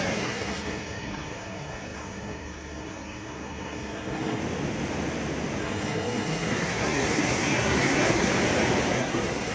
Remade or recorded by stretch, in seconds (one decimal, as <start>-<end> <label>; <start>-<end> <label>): 0.0-4.4 remade; 4.4-5.6 recorded; 5.6-8.3 remade; 8.3-8.9 recorded; 8.9-9.5 remade